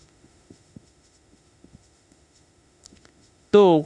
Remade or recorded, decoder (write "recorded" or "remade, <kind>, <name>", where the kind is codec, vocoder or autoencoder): remade, autoencoder, DAC-VAE